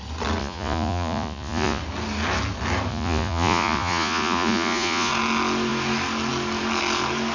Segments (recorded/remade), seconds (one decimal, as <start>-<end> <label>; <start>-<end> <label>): 0.0-0.4 recorded; 0.4-1.8 remade; 1.8-2.9 recorded; 2.9-5.1 remade; 5.1-7.3 recorded